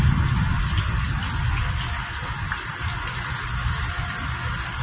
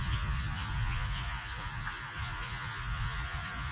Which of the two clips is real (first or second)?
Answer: first